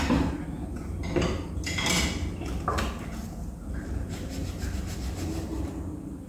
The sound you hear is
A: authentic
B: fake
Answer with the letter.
A